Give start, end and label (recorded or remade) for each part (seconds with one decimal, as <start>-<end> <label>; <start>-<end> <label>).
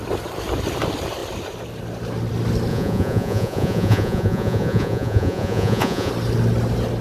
0.0-2.7 recorded; 2.7-6.1 remade; 6.1-7.0 recorded